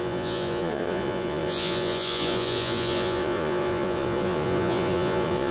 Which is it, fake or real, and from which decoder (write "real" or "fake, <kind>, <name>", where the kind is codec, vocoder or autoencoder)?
fake, vocoder, Vocos